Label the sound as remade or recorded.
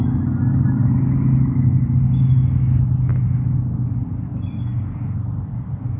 recorded